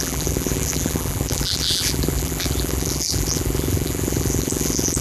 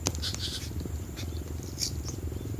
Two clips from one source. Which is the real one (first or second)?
second